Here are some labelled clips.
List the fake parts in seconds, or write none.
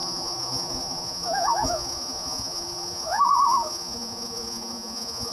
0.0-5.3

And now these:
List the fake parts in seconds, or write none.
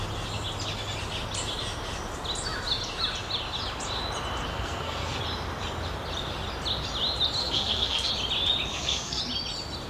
4.5-5.2; 7.4-8.1; 8.7-9.2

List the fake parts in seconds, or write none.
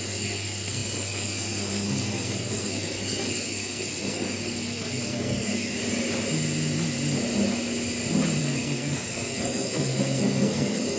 0.0-5.8; 8.4-11.0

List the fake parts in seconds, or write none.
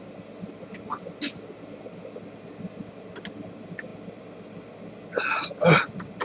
none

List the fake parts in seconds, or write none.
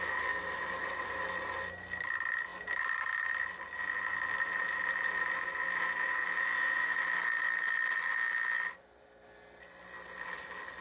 none